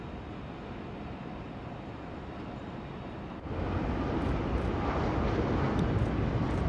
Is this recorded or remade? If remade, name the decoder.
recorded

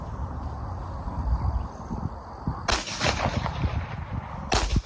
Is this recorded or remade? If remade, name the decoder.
recorded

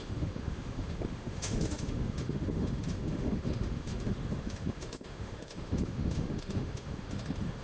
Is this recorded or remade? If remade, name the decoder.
remade, autoencoder, DAC-VAE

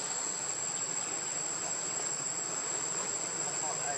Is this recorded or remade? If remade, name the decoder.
recorded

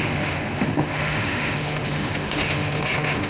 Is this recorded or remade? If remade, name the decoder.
remade, autoencoder, DAC-VAE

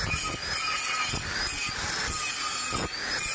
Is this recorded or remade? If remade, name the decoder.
recorded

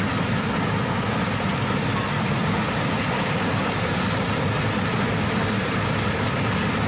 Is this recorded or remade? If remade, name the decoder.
recorded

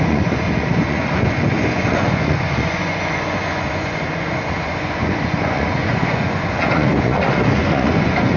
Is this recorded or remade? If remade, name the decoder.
remade, vocoder, Vocos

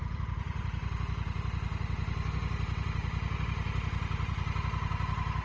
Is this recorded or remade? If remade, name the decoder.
recorded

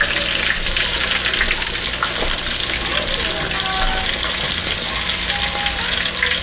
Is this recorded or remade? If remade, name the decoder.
recorded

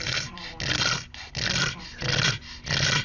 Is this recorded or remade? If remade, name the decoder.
recorded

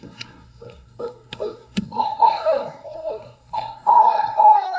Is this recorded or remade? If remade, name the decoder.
remade, codec, SNAC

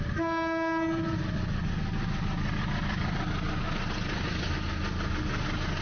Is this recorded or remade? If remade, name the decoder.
recorded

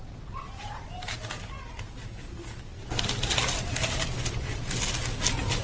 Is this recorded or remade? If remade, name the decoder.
recorded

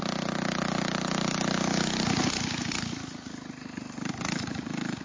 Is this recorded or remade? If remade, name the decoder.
recorded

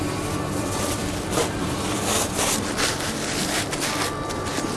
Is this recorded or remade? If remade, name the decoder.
remade, vocoder, BigVGAN v2